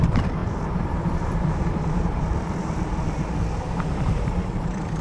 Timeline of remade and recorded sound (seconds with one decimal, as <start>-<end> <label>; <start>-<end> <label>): 0.0-5.0 remade